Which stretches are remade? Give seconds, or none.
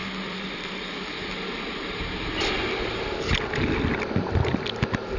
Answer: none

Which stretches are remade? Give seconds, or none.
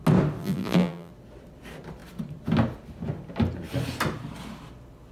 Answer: 0.4-1.1 (vocoder, BigVGAN v2)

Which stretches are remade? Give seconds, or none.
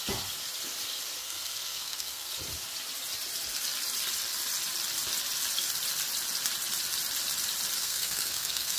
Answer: 1.2-2.3 (codec, SNAC); 7.8-8.8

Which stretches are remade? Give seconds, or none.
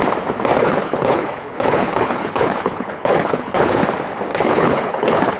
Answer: 0.6-3.8 (codec, HILCodec); 4.3-5.4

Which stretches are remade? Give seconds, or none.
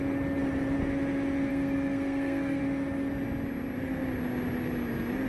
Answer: 1.5-2.6 (codec, SNAC)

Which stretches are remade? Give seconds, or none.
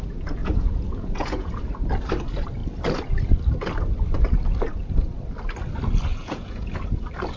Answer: 0.4-1.5 (vocoder, Vocos); 6.1-6.7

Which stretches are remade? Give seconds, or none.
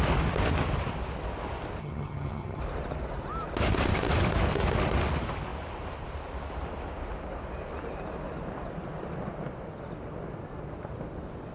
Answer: 1.8-2.6 (vocoder, HiFi-GAN)